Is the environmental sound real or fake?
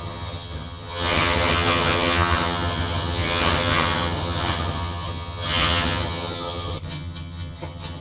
fake